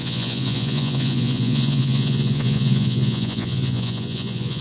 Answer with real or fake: fake